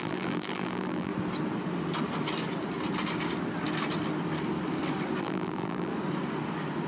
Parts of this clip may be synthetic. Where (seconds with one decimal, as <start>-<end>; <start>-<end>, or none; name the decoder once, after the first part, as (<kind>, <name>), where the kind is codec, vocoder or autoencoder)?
0.0-1.1 (vocoder, BigVGAN v2); 5.2-5.9